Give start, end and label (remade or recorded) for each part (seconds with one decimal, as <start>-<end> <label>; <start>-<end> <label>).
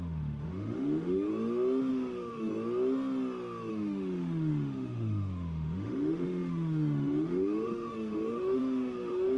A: 0.0-1.3 remade; 1.3-1.9 recorded; 1.9-2.5 remade; 2.5-3.7 recorded; 3.7-9.4 remade